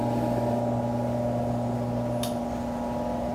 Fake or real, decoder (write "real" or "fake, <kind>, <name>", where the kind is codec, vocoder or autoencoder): real